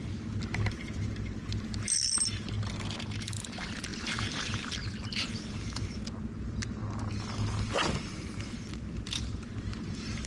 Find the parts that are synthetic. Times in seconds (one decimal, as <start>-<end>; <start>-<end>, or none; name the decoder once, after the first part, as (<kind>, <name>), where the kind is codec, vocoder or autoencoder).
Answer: 0.0-6.8 (vocoder, BigVGAN v2); 8.2-10.3